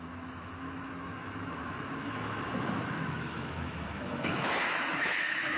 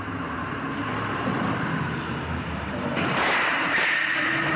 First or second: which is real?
second